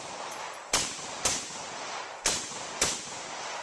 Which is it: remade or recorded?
remade